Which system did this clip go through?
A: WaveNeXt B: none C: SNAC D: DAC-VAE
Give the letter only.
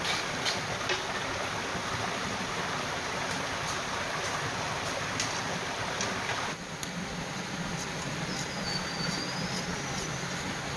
B